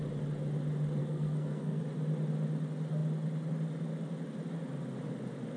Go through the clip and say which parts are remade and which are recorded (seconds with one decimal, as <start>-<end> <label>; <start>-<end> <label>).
0.0-1.0 recorded; 1.0-1.8 remade; 1.8-5.6 recorded